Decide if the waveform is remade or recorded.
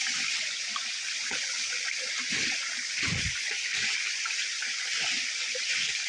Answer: recorded